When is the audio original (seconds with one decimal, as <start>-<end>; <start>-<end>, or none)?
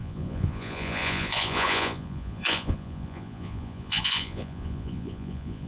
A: none